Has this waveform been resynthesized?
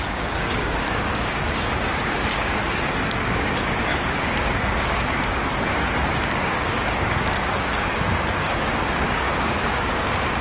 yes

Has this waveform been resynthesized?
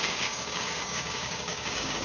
yes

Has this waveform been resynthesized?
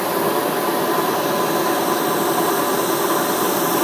no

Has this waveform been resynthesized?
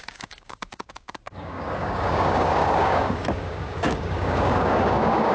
yes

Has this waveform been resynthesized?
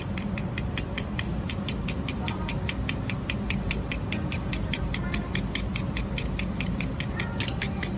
no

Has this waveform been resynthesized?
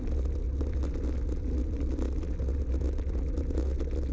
no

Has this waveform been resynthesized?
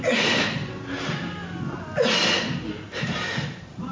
no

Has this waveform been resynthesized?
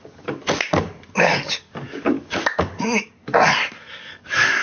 yes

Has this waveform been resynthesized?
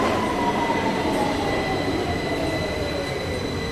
no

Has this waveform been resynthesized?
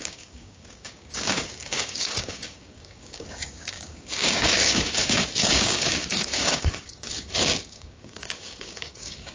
yes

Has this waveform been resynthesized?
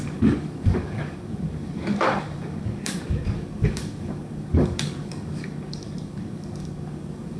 yes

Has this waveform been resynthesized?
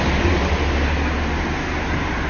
no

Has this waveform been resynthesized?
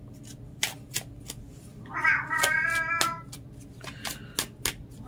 no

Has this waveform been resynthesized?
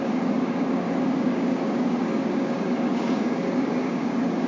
yes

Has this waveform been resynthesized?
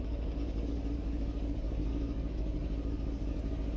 yes